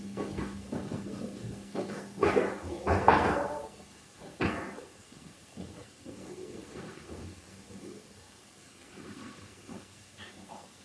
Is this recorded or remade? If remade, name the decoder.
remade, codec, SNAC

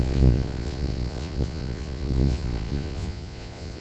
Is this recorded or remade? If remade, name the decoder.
remade, vocoder, Vocos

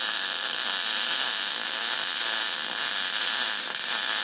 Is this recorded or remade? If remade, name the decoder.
recorded